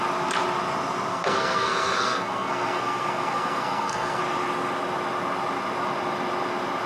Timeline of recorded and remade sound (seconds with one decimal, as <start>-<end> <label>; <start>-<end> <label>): 0.0-1.1 recorded; 1.1-4.2 remade; 4.2-6.9 recorded